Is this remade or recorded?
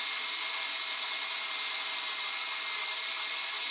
recorded